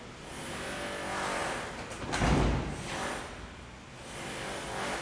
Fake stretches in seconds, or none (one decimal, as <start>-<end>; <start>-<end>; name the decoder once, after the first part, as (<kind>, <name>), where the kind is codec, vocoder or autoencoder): none

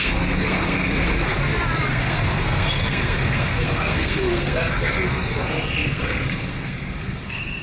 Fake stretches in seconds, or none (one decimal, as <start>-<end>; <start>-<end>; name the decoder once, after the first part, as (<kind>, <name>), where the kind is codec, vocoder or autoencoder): 0.0-1.4 (codec, SNAC); 1.9-7.6

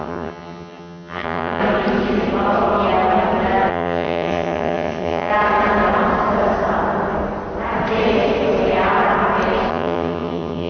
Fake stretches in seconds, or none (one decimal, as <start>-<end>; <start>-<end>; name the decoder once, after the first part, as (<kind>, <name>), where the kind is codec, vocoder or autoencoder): 0.0-1.6 (vocoder, HiFi-GAN); 3.7-5.3; 9.7-10.7

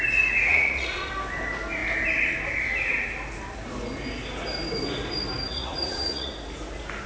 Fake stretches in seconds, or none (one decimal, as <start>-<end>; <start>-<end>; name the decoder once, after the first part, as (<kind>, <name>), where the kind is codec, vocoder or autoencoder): 0.5-1.1 (vocoder, Vocos); 5.5-6.3

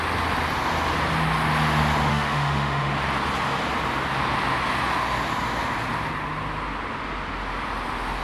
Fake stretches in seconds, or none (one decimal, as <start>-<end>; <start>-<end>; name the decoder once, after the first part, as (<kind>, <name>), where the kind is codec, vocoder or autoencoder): 2.1-2.9 (autoencoder, DAC-VAE)